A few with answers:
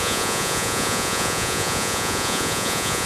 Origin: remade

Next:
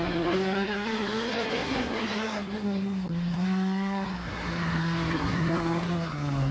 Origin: remade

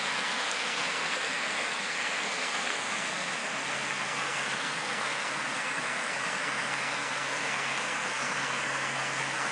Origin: remade